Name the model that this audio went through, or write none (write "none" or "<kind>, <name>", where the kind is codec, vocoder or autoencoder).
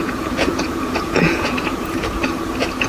vocoder, Vocos